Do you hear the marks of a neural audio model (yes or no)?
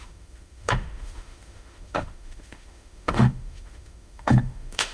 yes